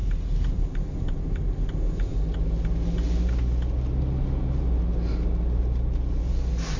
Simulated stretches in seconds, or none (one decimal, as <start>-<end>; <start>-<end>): 0.0-1.3